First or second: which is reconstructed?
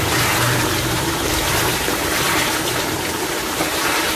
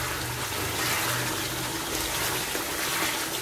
first